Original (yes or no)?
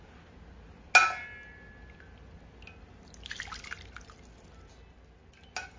yes